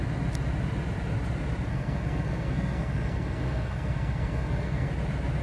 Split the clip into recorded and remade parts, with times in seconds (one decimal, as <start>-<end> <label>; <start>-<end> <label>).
0.0-1.7 recorded; 1.7-4.9 remade; 4.9-5.4 recorded